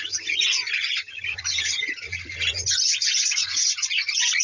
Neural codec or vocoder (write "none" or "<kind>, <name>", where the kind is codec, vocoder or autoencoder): vocoder, Vocos